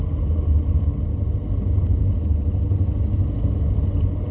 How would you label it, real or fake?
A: real